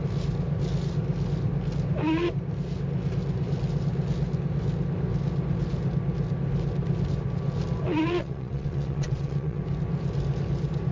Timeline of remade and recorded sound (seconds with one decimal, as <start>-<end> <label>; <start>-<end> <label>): 0.0-8.2 recorded; 8.2-9.6 remade; 9.6-10.9 recorded